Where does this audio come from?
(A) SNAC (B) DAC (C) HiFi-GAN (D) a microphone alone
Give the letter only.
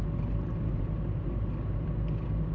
D